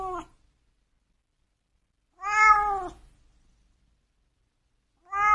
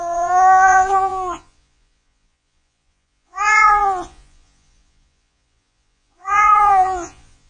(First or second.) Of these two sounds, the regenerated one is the second